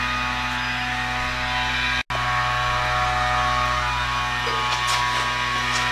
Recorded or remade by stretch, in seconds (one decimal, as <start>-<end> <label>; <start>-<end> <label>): 0.0-5.9 recorded